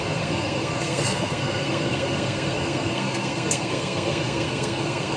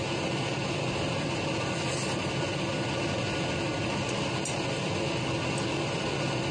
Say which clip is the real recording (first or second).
second